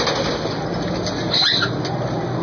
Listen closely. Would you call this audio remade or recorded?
recorded